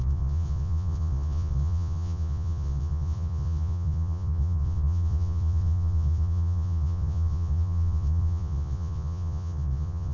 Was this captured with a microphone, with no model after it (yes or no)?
no